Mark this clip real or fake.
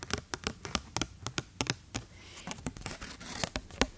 real